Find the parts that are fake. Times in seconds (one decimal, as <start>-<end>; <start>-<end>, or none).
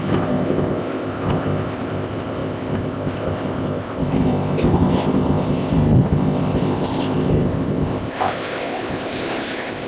0.0-9.9